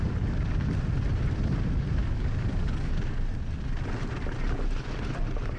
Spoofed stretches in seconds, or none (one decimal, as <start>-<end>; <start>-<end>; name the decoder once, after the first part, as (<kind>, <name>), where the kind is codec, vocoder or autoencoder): 2.0-2.9 (codec, DAC)